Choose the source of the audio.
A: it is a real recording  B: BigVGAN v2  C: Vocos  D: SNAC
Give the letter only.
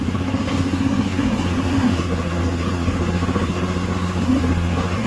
D